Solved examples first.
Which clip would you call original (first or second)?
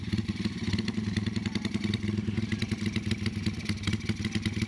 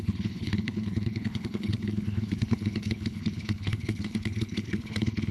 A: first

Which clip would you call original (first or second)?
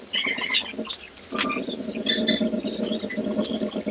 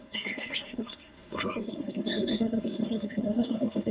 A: first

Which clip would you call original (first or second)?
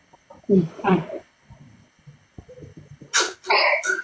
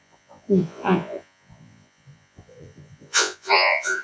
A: first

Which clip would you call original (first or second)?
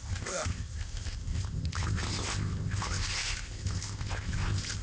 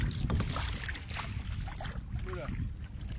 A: second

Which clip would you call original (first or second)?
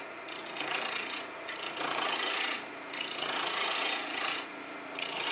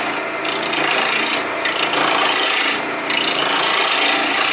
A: second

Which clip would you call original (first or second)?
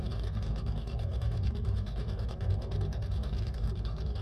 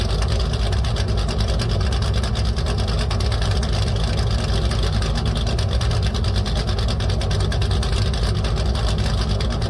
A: second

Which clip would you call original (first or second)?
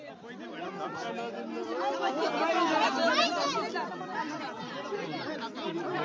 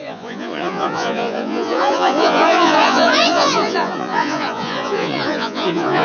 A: first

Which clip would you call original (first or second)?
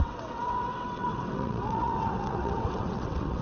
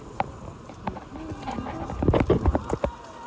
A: second